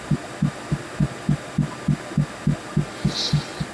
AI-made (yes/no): no